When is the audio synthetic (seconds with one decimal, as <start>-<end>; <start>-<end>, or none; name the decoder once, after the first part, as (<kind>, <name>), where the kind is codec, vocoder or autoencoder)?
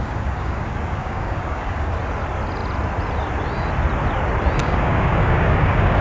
0.0-1.9 (codec, DAC); 4.6-6.0